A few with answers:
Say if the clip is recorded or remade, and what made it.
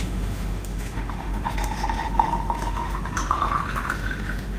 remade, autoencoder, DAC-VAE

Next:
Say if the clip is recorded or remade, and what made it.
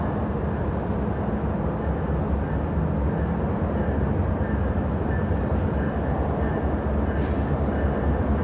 recorded